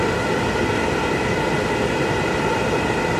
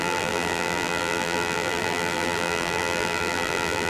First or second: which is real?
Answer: first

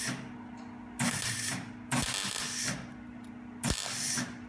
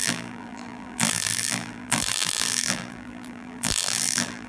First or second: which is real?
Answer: first